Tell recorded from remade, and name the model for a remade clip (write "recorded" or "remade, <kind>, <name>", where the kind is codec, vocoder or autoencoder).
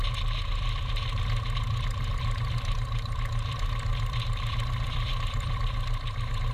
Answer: remade, vocoder, BigVGAN v2